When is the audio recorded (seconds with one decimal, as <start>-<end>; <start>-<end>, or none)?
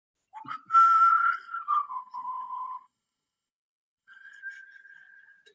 0.0-1.1; 4.4-5.5